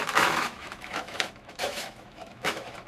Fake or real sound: fake